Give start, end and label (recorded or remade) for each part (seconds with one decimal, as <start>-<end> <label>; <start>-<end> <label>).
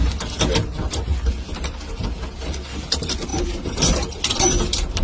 0.0-3.3 remade; 3.3-4.1 recorded; 4.1-5.0 remade